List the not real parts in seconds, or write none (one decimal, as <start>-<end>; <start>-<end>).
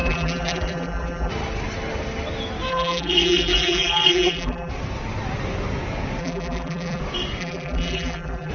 0.0-1.3; 2.7-4.7; 6.2-7.0; 7.4-8.5